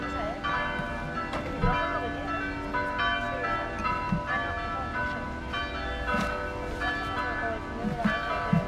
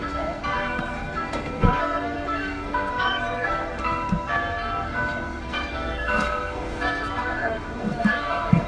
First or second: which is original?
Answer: first